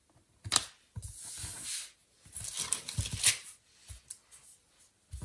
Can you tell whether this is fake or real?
real